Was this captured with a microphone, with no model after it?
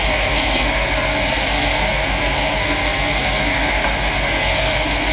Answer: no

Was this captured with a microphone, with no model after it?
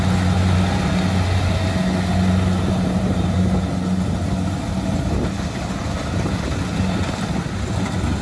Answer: yes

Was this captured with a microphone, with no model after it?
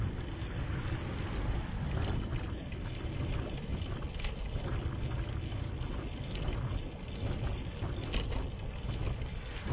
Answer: yes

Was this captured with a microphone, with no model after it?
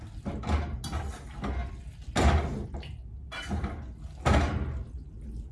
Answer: yes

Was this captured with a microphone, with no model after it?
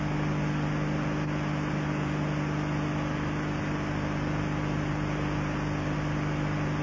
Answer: yes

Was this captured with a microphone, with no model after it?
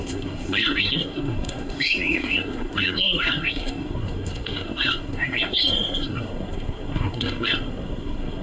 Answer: no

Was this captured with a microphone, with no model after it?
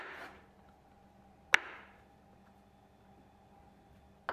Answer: yes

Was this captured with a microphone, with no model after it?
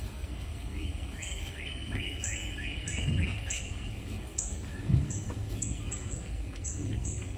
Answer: no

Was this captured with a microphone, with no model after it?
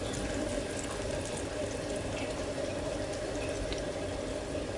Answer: yes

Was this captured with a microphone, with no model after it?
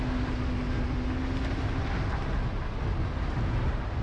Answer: yes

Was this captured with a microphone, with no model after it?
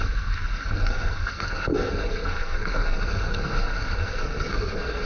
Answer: no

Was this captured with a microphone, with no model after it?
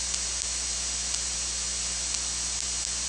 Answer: yes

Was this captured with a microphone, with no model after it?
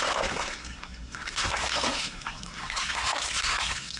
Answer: no